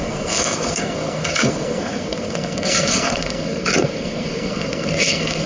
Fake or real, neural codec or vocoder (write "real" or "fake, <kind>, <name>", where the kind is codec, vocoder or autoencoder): fake, codec, SNAC